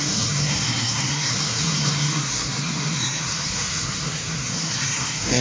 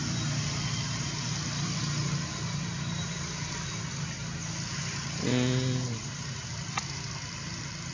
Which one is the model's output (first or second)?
first